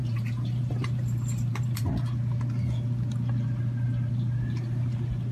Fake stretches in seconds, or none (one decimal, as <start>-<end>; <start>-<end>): 0.0-1.8